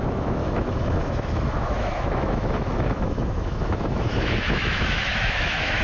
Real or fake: fake